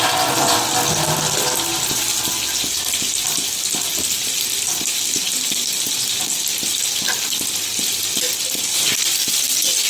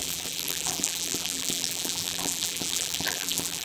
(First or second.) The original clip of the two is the first